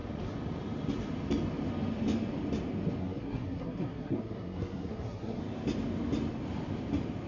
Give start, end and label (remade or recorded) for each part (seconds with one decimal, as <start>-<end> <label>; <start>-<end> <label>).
0.0-3.0 recorded; 3.0-5.4 remade; 5.4-7.3 recorded